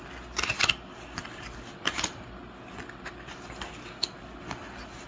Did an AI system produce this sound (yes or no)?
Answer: no